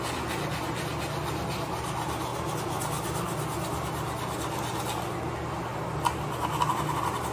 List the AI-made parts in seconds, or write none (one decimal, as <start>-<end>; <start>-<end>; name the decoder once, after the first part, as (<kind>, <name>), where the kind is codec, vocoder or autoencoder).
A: none